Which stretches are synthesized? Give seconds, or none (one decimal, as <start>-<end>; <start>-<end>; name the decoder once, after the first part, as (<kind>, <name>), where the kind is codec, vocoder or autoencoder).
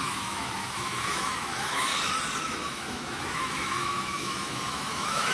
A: 0.0-1.9 (autoencoder, DAC-VAE); 2.4-5.3